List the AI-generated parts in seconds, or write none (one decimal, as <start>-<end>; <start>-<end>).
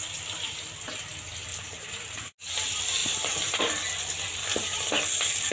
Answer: 1.5-2.3; 3.0-3.6; 4.4-4.9